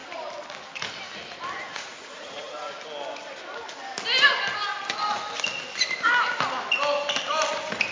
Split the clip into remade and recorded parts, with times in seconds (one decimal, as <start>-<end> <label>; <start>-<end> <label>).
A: 0.0-1.7 recorded; 1.7-2.8 remade; 2.8-7.9 recorded